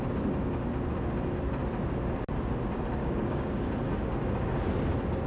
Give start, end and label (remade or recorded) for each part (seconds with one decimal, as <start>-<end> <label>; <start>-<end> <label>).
0.0-3.0 recorded; 3.0-3.6 remade; 3.6-5.3 recorded